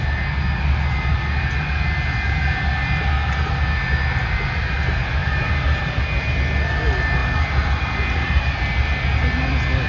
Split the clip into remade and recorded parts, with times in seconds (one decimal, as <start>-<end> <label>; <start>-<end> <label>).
0.0-5.2 recorded; 5.2-6.0 remade; 6.0-7.2 recorded; 7.2-8.5 remade; 8.5-9.9 recorded